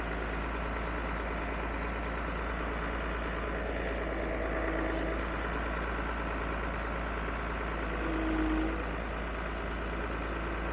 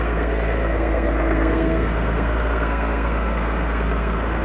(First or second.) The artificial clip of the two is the second